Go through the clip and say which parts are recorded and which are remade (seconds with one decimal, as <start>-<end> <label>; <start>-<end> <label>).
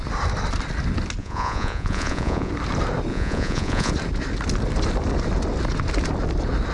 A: 0.0-1.2 recorded; 1.2-2.5 remade; 2.5-3.1 recorded; 3.1-3.9 remade; 3.9-6.7 recorded